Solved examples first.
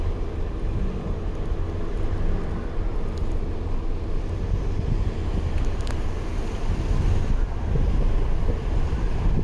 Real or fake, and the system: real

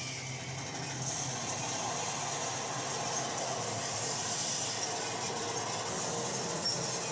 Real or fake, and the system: real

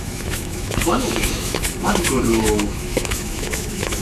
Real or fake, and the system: fake, autoencoder, DAC-VAE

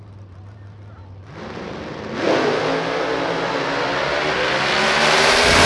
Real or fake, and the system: real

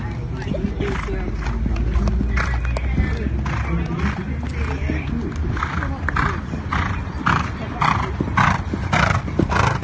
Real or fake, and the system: real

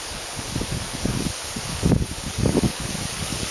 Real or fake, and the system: fake, codec, DAC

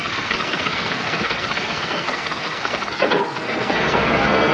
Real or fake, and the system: fake, codec, SNAC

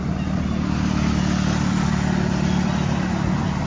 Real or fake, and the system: real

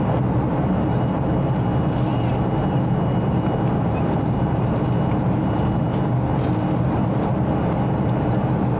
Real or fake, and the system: real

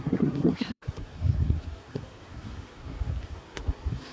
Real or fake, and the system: fake, codec, SNAC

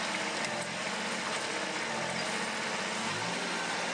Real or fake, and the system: real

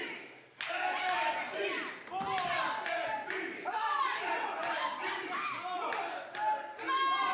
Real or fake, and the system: real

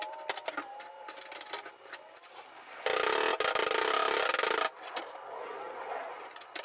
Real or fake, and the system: real